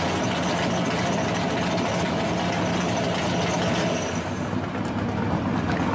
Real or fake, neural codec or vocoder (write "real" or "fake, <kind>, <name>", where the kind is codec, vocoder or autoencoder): real